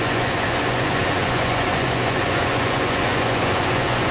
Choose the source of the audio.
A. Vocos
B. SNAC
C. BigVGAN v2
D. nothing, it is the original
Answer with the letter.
A